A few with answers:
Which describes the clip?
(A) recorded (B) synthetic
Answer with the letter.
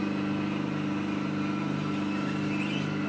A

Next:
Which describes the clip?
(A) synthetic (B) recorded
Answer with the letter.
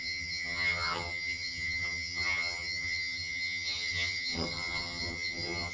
A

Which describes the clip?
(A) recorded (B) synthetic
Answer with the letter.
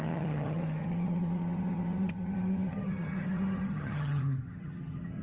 B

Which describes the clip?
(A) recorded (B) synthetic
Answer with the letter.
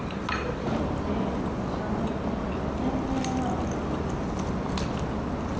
A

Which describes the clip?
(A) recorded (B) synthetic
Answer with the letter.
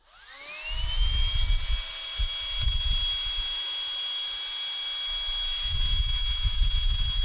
A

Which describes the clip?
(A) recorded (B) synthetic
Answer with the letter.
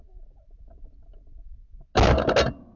A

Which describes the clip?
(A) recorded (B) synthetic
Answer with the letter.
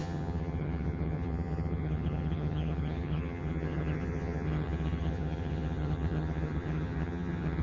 B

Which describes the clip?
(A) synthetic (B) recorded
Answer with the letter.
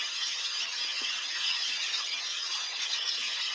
A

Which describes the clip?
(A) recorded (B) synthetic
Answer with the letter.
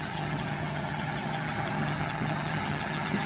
B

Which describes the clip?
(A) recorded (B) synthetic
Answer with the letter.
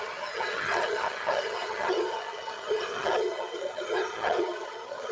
B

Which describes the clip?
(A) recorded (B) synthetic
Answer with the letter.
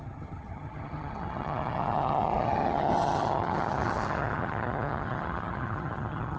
B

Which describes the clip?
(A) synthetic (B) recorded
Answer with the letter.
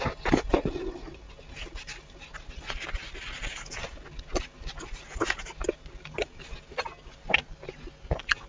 B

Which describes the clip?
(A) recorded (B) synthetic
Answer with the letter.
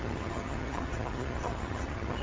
B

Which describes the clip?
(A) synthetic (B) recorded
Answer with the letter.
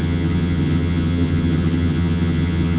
A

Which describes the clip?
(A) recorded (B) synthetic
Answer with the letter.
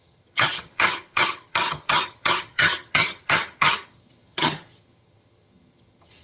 B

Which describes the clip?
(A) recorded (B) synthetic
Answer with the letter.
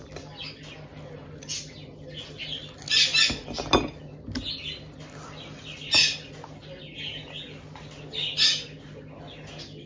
A